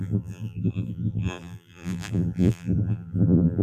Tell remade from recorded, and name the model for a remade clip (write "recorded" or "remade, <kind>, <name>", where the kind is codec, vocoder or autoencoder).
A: remade, vocoder, BigVGAN v2